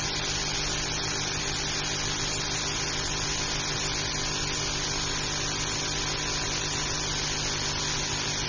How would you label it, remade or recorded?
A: recorded